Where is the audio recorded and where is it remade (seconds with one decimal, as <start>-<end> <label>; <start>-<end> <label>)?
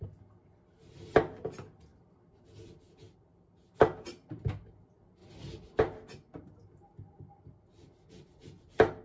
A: 0.0-9.0 recorded